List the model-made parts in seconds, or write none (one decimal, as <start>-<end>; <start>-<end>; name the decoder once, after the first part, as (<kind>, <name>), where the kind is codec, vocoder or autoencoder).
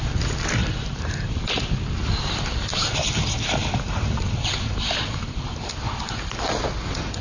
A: 0.6-1.3 (vocoder, BigVGAN v2); 2.7-5.7